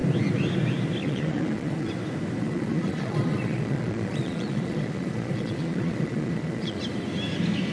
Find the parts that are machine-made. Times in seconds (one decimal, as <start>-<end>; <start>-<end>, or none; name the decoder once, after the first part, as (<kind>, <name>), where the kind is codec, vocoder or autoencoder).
1.0-1.9 (vocoder, Vocos); 2.4-6.8